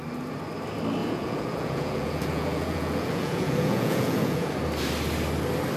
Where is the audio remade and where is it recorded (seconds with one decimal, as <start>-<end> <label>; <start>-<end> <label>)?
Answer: 0.0-1.0 recorded; 1.0-4.5 remade; 4.5-5.8 recorded